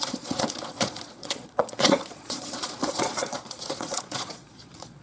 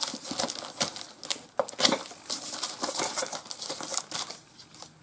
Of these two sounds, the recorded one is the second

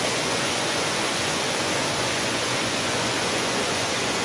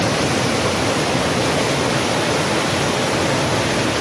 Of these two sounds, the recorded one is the second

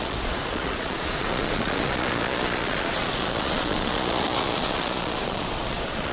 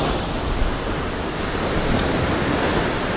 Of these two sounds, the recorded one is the second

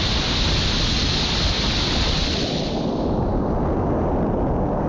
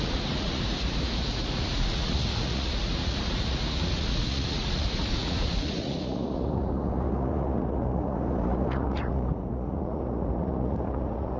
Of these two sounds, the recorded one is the first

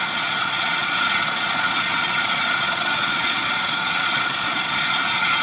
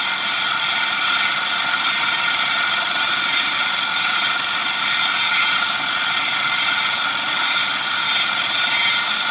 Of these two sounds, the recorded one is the second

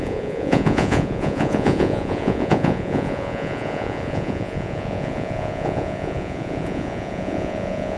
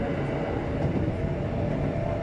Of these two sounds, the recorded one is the second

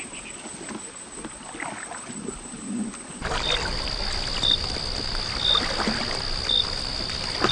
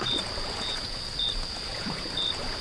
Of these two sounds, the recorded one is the first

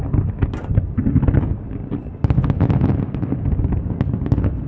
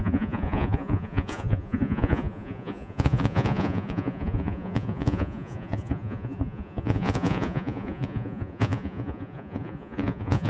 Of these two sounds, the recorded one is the first